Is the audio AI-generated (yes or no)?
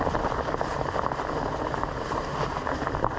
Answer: no